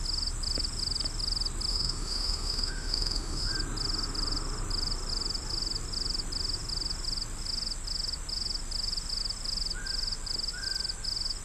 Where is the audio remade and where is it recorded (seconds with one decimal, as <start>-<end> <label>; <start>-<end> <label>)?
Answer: 0.0-1.7 recorded; 1.7-3.5 remade; 3.5-11.4 recorded